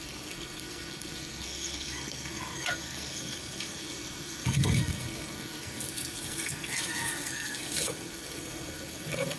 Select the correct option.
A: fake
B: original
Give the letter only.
A